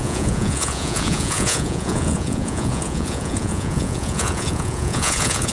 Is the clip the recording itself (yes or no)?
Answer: no